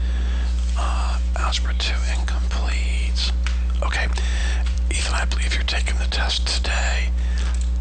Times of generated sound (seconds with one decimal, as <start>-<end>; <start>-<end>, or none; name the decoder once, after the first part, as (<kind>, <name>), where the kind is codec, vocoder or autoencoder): 4.4-5.0 (vocoder, BigVGAN v2)